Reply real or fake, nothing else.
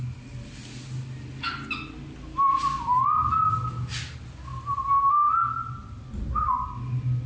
real